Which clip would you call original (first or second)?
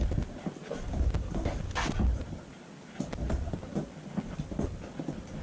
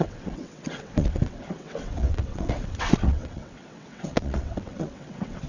first